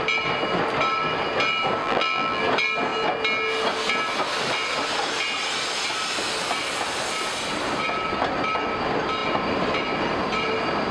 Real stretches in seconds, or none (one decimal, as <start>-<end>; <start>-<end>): 0.0-1.8; 2.4-10.9